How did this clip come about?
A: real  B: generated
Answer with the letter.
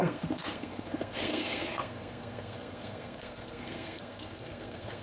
B